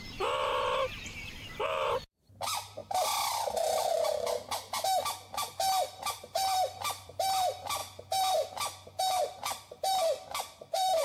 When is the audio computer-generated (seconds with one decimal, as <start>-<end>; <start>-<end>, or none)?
0.0-2.8; 6.1-7.8; 9.0-11.0